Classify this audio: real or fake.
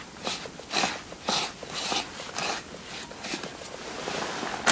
real